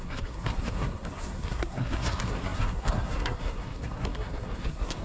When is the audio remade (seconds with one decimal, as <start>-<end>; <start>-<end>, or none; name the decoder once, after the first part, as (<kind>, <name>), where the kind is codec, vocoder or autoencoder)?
0.0-5.0 (codec, SNAC)